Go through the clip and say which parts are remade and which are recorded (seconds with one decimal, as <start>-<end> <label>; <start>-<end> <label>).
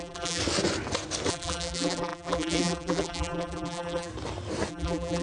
0.0-0.4 remade; 0.4-1.3 recorded; 1.3-4.1 remade; 4.1-4.7 recorded; 4.7-5.2 remade